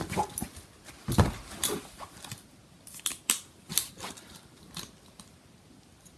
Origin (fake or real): real